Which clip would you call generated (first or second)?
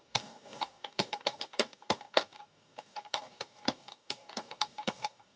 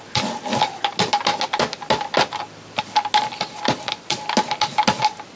first